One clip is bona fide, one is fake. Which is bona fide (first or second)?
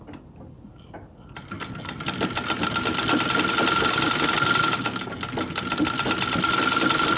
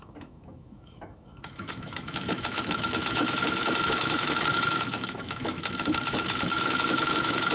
first